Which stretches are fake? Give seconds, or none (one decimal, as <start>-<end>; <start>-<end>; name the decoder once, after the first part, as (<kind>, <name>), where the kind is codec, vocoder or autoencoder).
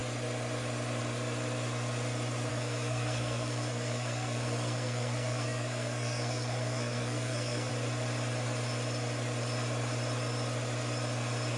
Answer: 2.5-7.7 (codec, SNAC)